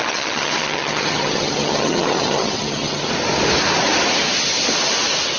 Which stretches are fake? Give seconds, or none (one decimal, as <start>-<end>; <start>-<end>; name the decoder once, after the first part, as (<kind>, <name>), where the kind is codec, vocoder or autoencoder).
0.0-3.1 (vocoder, HiFi-GAN)